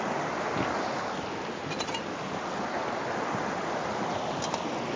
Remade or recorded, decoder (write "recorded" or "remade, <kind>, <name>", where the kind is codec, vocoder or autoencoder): recorded